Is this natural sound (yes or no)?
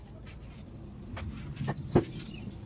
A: yes